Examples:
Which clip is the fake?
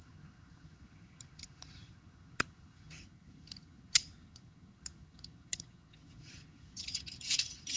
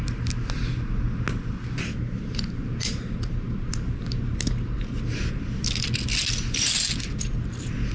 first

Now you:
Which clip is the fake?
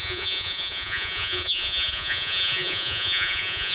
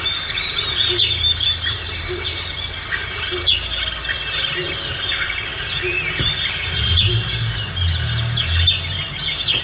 first